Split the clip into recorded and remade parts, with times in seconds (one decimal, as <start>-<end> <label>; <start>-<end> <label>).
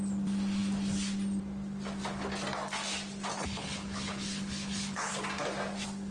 0.0-3.3 recorded; 3.3-5.1 remade; 5.1-6.1 recorded